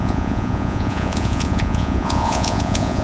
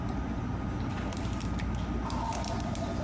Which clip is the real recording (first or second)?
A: second